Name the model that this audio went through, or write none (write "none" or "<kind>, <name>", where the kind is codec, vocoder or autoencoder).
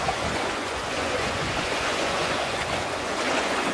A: vocoder, Vocos